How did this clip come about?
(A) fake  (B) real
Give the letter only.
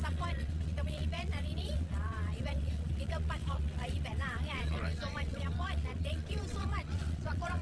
A